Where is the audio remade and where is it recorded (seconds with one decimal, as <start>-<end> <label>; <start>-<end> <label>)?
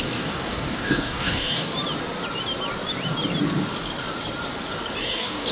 0.0-1.7 remade; 1.7-5.0 recorded; 5.0-5.5 remade